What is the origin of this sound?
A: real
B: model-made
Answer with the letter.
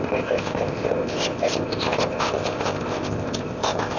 B